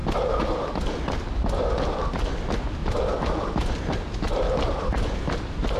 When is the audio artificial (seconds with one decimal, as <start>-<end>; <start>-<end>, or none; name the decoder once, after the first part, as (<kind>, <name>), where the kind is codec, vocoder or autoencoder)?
none